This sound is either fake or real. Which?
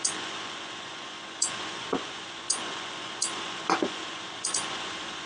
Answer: fake